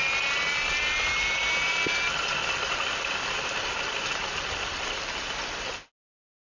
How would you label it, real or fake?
real